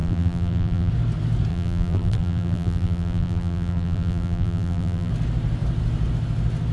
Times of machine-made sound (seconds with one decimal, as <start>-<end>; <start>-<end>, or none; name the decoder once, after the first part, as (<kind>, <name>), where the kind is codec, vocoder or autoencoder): 0.0-0.9 (vocoder, BigVGAN v2); 1.5-5.1